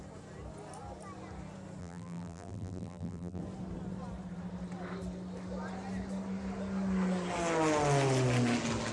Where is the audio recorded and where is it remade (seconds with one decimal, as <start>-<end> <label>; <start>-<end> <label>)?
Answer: 0.0-1.8 recorded; 1.8-3.4 remade; 3.4-8.9 recorded